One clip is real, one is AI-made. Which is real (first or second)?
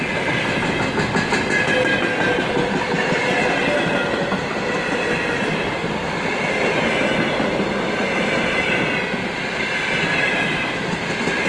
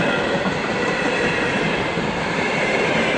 first